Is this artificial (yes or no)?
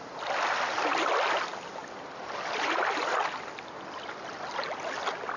no